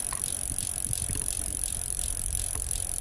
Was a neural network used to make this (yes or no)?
no